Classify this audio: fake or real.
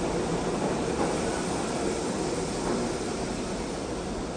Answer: real